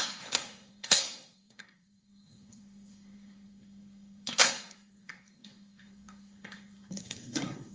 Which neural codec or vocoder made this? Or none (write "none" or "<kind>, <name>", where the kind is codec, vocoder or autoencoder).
codec, SNAC